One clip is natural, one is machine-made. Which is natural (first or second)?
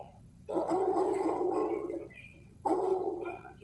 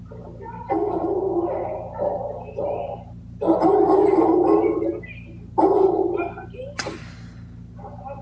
second